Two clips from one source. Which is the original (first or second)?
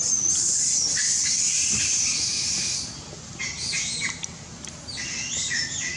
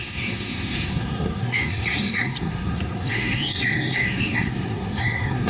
first